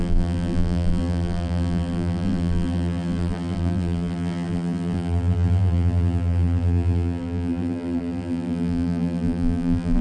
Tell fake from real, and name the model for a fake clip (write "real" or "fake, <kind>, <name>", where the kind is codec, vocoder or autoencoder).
fake, vocoder, BigVGAN v2